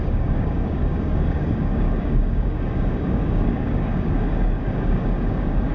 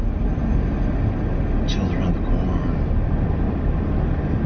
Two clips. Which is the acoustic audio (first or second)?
second